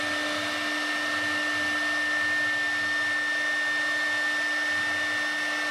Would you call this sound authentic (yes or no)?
yes